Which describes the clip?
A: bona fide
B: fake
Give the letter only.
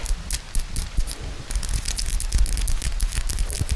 A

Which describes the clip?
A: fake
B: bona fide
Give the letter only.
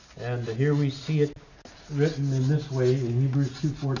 B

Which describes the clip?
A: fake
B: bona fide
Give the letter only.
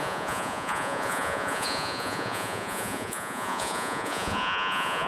A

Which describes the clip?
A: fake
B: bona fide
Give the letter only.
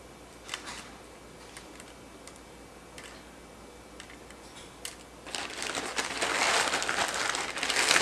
B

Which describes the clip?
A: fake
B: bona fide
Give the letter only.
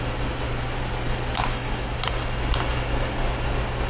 B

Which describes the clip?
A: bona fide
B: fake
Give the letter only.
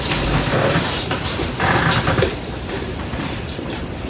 B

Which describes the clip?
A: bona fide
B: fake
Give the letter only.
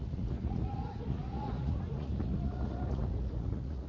B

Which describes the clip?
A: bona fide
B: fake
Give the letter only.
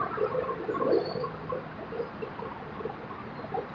A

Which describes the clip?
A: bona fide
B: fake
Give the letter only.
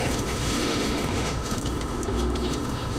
B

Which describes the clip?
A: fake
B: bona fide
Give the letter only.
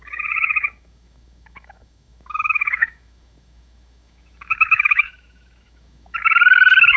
A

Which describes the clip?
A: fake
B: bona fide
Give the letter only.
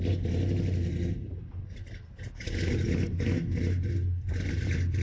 B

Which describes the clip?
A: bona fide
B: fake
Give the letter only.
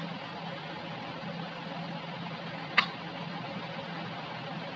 A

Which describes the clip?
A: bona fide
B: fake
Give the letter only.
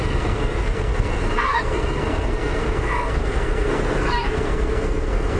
B